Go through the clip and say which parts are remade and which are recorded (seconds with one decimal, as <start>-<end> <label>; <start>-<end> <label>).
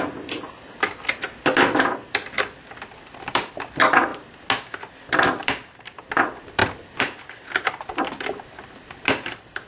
0.0-4.1 remade; 4.1-4.9 recorded; 4.9-9.7 remade